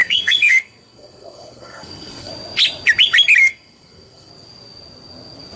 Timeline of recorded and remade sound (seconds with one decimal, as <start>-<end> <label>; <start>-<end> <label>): 0.0-2.3 remade; 2.3-3.4 recorded; 3.4-4.3 remade; 4.3-5.6 recorded